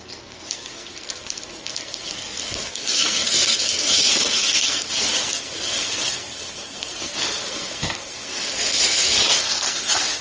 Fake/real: fake